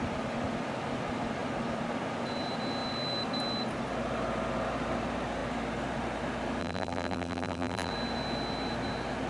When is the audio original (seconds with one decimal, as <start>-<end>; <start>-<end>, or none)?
0.0-6.6; 7.9-9.3